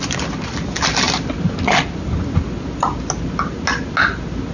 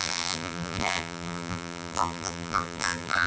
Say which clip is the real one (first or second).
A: first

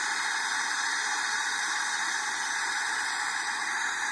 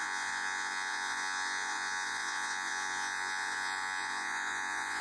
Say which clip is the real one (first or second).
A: first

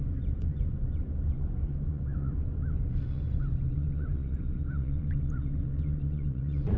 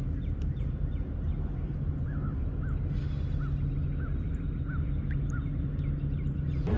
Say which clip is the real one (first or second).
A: second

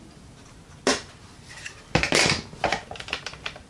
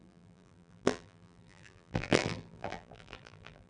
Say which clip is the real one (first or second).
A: first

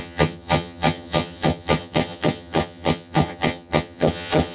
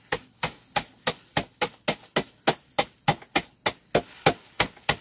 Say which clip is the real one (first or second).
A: second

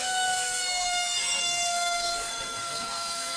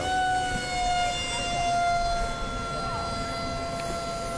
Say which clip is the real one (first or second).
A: second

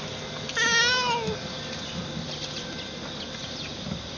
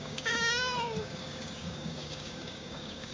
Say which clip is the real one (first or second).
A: first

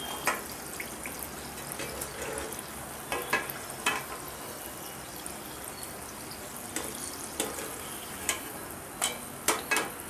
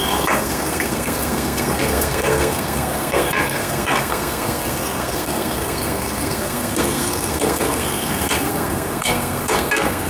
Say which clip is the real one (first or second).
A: first